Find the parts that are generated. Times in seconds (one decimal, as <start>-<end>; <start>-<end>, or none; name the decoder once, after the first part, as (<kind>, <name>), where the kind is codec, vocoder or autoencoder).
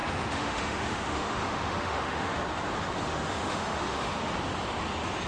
0.0-2.4 (autoencoder, DAC-VAE); 3.0-4.3